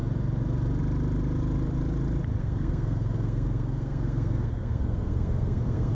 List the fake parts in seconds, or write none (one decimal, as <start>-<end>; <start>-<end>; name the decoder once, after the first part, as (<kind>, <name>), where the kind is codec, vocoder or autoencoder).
2.4-5.9 (codec, SNAC)